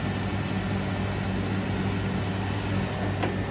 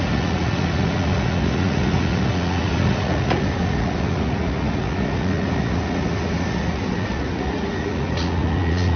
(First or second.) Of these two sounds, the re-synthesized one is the second